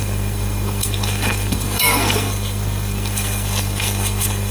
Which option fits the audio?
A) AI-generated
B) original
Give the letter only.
A